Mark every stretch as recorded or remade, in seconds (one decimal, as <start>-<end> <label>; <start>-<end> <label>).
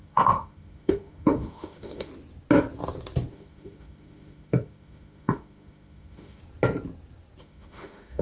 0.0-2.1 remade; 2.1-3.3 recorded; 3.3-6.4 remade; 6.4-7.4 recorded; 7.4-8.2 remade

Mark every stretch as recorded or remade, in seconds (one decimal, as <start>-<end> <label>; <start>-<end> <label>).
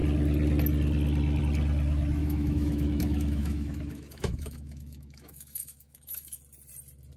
0.0-2.2 recorded; 2.2-6.4 remade; 6.4-7.2 recorded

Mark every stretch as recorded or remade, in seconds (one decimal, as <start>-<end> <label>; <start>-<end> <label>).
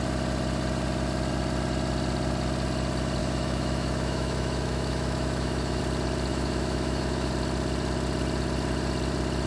0.0-3.2 recorded; 3.2-5.8 remade; 5.8-6.3 recorded; 6.3-7.3 remade; 7.3-9.5 recorded